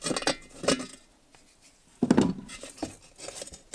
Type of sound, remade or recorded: recorded